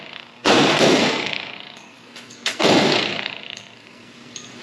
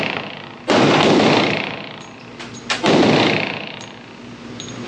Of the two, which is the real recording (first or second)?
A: second